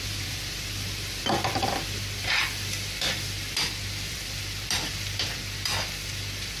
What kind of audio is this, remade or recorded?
remade